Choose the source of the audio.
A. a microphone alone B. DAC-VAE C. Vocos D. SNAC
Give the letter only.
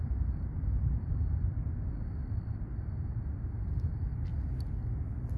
A